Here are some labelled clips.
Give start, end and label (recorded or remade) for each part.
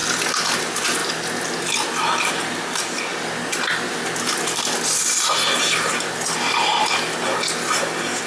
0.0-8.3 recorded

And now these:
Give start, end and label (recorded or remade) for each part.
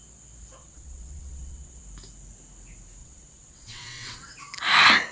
0.0-0.6 recorded; 0.6-1.8 remade; 1.8-3.0 recorded; 3.0-4.3 remade; 4.3-5.1 recorded